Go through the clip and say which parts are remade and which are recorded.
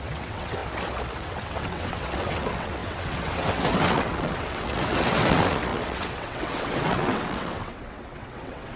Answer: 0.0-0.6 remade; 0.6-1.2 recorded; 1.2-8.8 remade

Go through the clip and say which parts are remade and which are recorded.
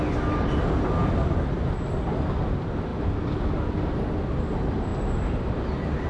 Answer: 0.0-1.0 recorded; 1.0-1.6 remade; 1.6-2.9 recorded; 2.9-4.4 remade; 4.4-6.1 recorded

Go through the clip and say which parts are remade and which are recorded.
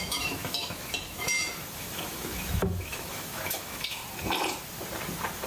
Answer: 0.0-4.0 remade; 4.0-5.5 recorded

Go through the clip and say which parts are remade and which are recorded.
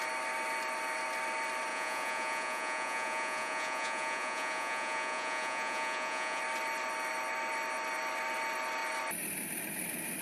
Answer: 0.0-1.7 recorded; 1.7-6.4 remade; 6.4-10.2 recorded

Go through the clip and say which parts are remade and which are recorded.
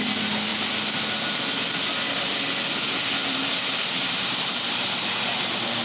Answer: 0.0-3.2 recorded; 3.2-5.1 remade; 5.1-5.8 recorded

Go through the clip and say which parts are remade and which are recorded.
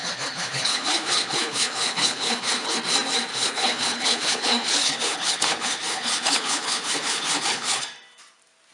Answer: 0.0-2.8 remade; 2.8-3.3 recorded; 3.3-7.8 remade; 7.8-8.7 recorded